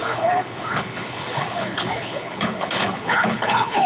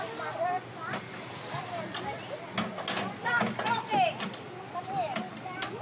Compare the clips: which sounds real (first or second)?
second